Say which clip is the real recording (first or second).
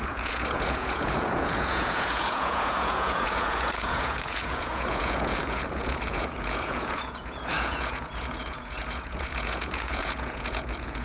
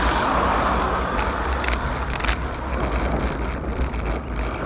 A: second